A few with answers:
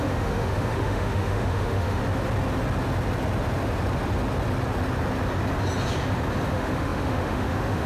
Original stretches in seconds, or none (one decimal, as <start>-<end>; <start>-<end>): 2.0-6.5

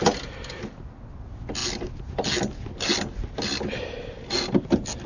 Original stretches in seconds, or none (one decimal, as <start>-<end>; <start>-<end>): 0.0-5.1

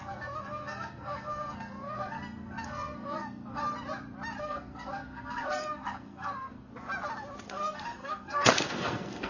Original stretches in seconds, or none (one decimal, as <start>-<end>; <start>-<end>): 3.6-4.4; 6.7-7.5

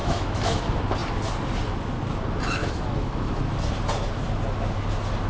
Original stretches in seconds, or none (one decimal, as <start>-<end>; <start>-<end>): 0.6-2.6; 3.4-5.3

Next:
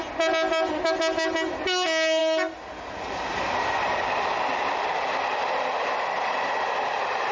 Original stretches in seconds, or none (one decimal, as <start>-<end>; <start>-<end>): 0.0-7.3